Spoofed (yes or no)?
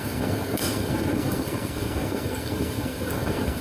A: yes